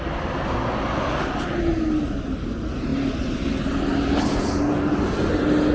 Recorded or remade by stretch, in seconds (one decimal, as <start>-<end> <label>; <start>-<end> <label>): 0.0-5.7 recorded

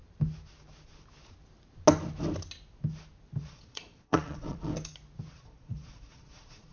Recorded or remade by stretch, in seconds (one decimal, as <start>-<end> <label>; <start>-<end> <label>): 0.0-3.4 recorded; 3.4-4.7 remade; 4.7-5.3 recorded; 5.3-6.7 remade

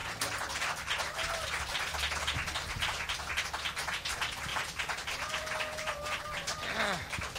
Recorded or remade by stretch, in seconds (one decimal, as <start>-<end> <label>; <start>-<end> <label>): 0.0-4.5 recorded; 4.5-6.2 remade; 6.2-7.4 recorded

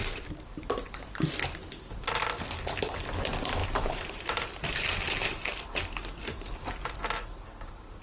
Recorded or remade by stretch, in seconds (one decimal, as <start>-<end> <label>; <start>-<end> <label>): 0.0-1.3 remade; 1.3-3.6 recorded; 3.6-7.0 remade; 7.0-8.0 recorded